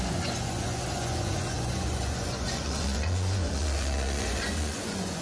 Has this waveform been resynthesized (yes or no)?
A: yes